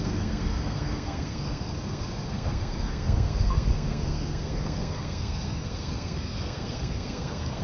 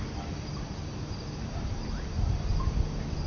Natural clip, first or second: second